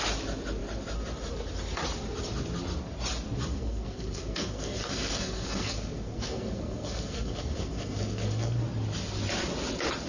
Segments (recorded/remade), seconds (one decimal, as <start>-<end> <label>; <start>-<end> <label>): 0.0-3.5 recorded; 3.5-8.6 remade; 8.6-10.1 recorded